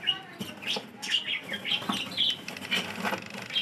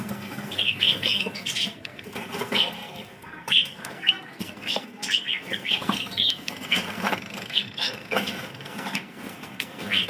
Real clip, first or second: first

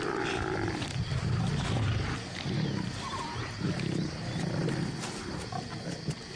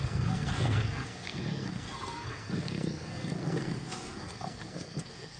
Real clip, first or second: first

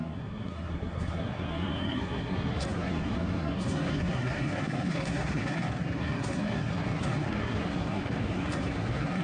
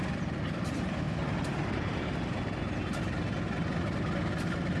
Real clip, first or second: second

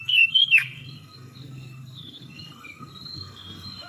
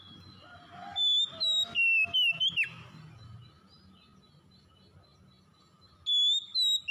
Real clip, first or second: second